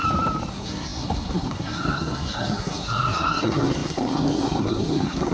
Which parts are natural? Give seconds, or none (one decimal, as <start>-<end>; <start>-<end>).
0.0-0.5